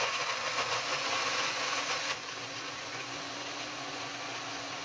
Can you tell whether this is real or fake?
fake